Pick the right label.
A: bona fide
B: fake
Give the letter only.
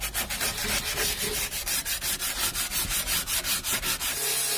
A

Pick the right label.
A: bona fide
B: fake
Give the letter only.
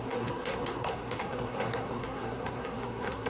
B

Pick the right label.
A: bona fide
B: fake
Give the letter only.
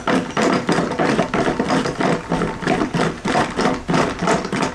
A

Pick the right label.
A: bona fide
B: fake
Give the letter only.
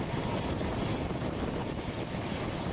A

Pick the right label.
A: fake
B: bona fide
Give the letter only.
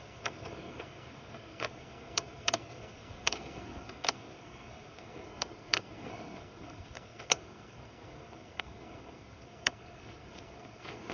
A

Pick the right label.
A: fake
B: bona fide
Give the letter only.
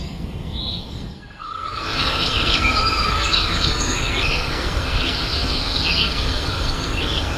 A